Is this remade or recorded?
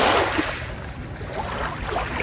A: recorded